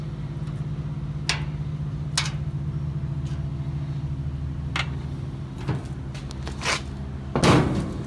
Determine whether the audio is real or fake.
real